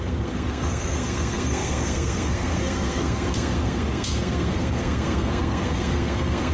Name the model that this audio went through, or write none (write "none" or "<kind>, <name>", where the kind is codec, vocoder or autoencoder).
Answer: codec, SNAC